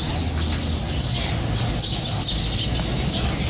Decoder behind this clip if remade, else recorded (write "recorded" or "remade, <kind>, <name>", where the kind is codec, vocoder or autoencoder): recorded